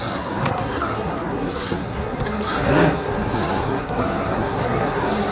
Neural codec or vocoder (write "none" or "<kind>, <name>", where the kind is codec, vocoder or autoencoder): codec, SNAC